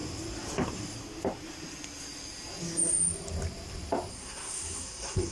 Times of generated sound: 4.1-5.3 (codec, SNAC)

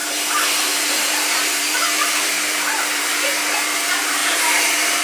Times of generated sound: 0.0-5.0 (vocoder, BigVGAN v2)